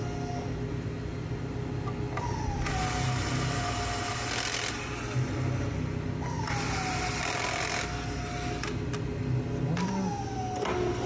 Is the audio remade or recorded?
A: recorded